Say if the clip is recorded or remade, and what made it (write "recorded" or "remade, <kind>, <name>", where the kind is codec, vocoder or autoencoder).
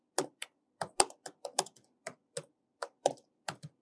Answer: recorded